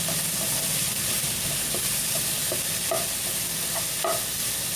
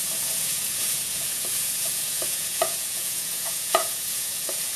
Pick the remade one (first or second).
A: second